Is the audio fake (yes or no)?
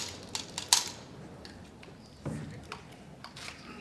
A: no